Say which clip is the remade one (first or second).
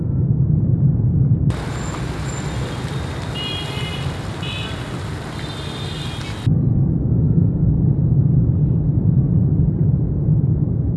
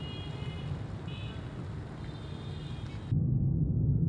first